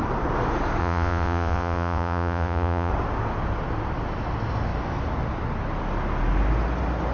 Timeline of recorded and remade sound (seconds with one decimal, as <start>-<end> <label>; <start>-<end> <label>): 0.0-0.8 recorded; 0.8-2.9 remade; 2.9-7.1 recorded